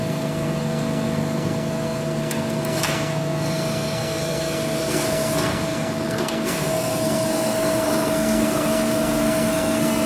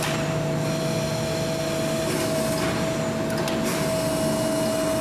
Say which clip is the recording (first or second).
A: second